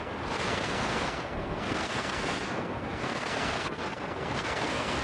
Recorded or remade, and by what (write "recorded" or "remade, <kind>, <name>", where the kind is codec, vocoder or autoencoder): remade, codec, SNAC